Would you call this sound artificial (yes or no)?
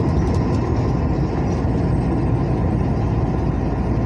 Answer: no